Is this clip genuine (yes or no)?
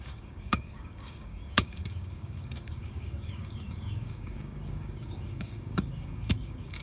no